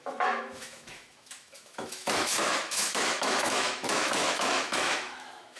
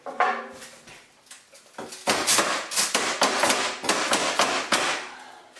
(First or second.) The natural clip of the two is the second